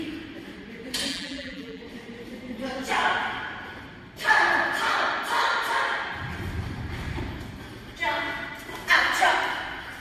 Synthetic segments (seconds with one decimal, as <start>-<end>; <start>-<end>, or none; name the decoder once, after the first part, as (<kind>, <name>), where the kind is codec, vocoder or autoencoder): 1.1-1.8 (vocoder, BigVGAN v2)